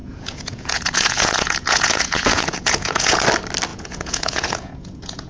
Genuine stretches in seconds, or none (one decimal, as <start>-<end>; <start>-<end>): 3.2-3.7